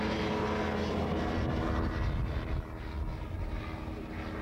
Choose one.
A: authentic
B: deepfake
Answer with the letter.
A